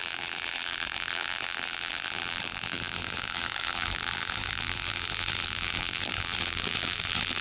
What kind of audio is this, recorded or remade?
remade